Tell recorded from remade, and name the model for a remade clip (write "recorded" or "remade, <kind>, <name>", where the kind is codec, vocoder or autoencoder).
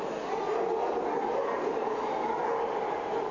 recorded